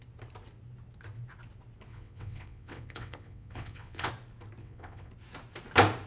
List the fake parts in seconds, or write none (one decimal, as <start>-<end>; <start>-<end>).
1.9-4.1; 4.6-5.1